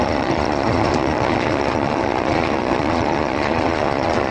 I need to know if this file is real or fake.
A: fake